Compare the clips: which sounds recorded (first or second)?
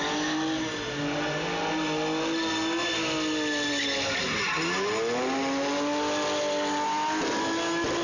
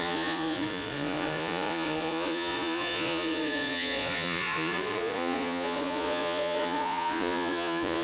first